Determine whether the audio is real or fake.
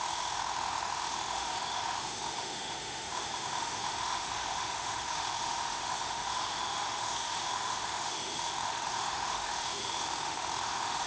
fake